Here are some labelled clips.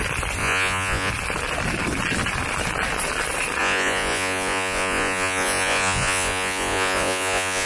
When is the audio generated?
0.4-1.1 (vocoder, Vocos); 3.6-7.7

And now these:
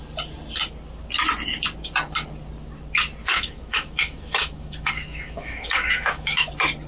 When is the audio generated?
3.2-6.5 (autoencoder, DAC-VAE)

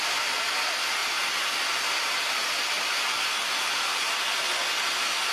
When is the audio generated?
none

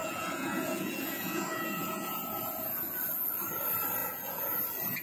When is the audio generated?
0.0-3.0 (vocoder, Vocos); 4.0-4.6

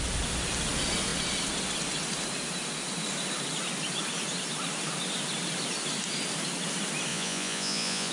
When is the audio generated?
7.1-8.1 (vocoder, Vocos)